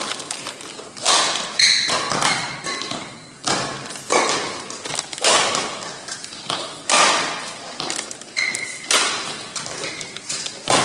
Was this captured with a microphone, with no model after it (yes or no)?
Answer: yes